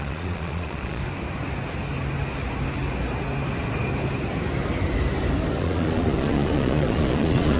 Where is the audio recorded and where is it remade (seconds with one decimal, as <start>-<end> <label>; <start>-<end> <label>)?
0.0-1.0 remade; 1.0-5.6 recorded; 5.6-7.6 remade